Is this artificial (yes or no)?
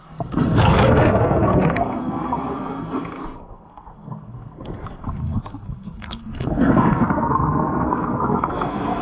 yes